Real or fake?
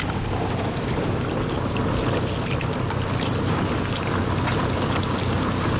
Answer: real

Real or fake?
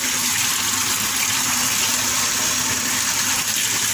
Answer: real